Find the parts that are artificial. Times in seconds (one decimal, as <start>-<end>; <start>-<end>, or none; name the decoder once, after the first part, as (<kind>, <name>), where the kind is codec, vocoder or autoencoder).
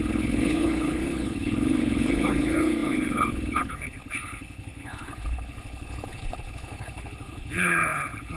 0.0-8.4 (codec, HILCodec)